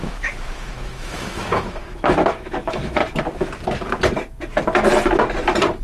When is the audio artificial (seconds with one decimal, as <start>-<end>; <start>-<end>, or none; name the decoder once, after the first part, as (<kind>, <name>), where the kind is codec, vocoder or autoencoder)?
0.0-3.0 (autoencoder, DAC-VAE)